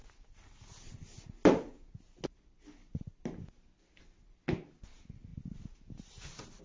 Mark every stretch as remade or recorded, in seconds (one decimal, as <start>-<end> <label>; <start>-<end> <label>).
0.0-6.6 recorded